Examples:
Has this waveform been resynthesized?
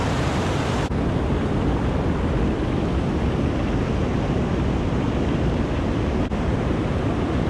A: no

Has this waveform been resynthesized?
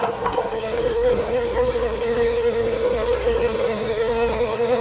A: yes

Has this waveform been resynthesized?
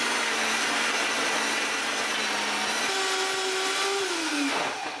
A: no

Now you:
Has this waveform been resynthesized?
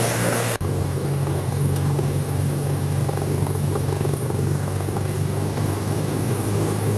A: yes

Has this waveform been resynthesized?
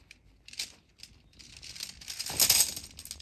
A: no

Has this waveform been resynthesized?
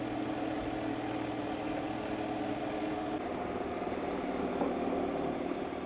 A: no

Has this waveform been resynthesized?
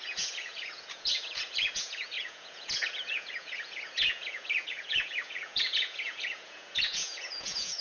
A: yes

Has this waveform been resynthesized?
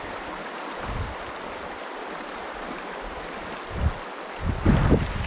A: no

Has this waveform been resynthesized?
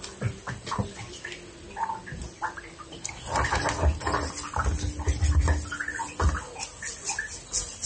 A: no